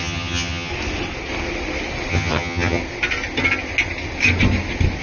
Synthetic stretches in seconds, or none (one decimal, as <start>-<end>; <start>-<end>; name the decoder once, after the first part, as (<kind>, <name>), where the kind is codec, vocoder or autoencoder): 0.0-0.7 (vocoder, HiFi-GAN); 2.1-2.8

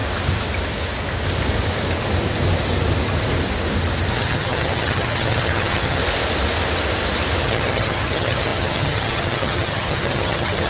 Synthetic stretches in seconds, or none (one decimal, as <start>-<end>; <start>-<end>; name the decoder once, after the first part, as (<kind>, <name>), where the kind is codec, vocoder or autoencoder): 4.1-6.0 (vocoder, HiFi-GAN); 7.4-10.7

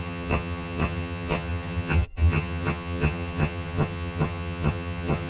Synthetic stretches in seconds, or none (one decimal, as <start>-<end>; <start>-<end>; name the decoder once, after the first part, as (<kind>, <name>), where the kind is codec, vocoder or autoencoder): 0.0-5.3 (vocoder, HiFi-GAN)

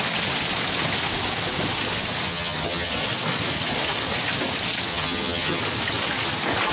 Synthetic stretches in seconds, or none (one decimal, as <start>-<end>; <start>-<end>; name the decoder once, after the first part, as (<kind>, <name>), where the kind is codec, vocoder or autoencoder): 2.3-2.9 (vocoder, HiFi-GAN); 4.9-5.6

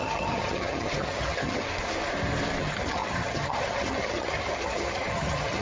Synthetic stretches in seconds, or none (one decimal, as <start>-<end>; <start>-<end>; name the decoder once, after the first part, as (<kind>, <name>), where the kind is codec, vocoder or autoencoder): 0.0-1.7 (vocoder, HiFi-GAN); 2.6-5.6

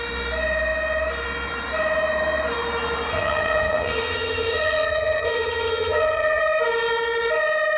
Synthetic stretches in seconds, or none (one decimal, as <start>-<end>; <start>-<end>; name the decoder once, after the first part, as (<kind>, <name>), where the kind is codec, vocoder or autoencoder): 3.1-6.4 (vocoder, HiFi-GAN)